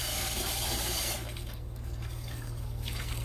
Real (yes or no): no